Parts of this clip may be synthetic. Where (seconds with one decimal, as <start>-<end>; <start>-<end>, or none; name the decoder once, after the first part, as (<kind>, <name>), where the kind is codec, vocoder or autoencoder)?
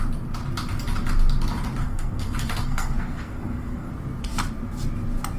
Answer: 1.8-3.9 (codec, SNAC)